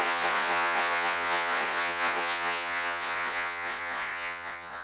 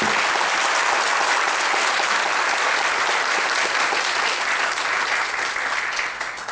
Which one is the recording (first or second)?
second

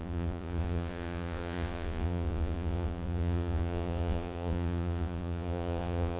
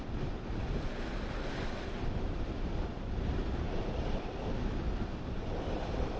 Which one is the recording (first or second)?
second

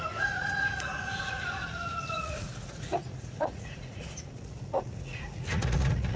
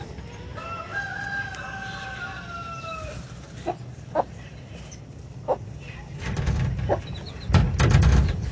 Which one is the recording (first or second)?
second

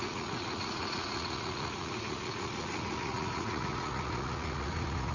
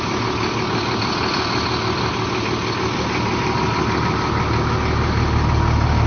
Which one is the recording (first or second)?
second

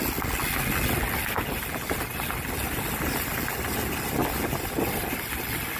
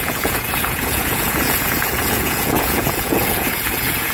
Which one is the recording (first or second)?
first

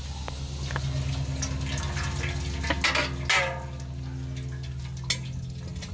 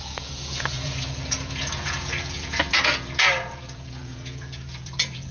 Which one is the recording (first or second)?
first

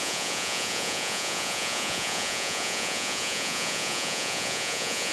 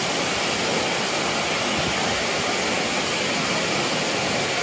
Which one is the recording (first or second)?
second